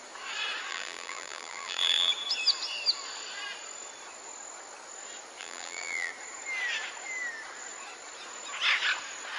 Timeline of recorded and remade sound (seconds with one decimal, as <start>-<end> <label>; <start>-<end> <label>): 0.0-0.7 recorded; 0.7-2.1 remade; 2.1-5.4 recorded; 5.4-6.1 remade; 6.1-9.4 recorded